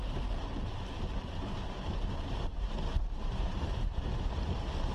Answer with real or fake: fake